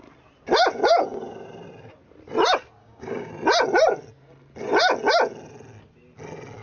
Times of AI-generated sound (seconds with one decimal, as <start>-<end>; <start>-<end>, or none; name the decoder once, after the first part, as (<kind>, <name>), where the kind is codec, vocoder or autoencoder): 2.8-3.3 (codec, DAC)